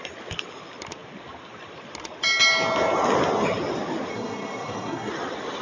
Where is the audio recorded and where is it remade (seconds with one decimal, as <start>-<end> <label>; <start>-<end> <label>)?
0.0-4.1 recorded; 4.1-5.1 remade; 5.1-5.6 recorded